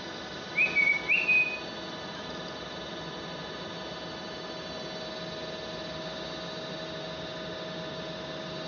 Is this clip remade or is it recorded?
recorded